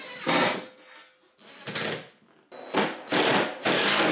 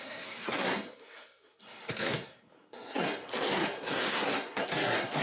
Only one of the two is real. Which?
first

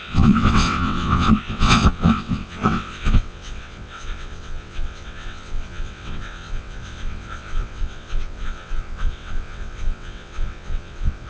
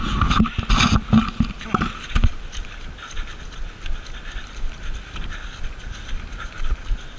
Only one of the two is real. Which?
second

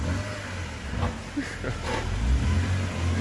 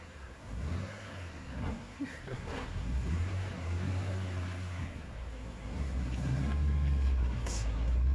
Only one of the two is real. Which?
first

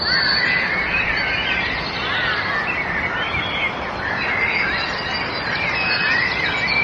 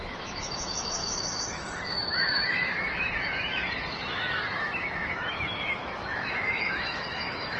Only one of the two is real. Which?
first